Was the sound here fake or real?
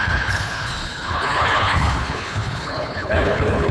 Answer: fake